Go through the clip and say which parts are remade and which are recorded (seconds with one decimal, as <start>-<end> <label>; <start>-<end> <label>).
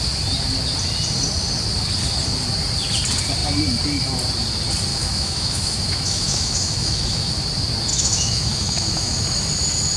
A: 0.0-4.9 recorded; 4.9-7.3 remade; 7.3-7.9 recorded; 7.9-9.2 remade; 9.2-10.0 recorded